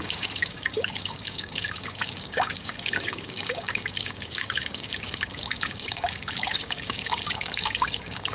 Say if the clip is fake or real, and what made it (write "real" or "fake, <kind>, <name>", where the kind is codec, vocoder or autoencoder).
fake, codec, DAC